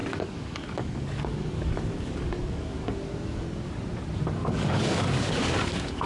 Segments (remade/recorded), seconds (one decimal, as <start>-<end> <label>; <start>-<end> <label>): 0.0-3.7 remade; 3.7-4.4 recorded; 4.4-6.1 remade